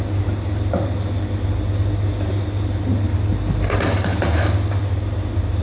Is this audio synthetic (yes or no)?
no